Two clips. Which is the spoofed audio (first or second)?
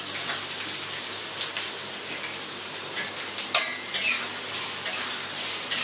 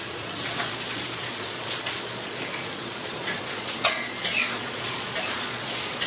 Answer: second